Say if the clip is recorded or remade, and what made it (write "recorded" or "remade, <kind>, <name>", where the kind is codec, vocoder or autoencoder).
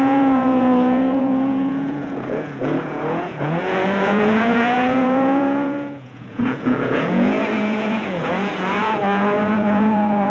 remade, vocoder, Vocos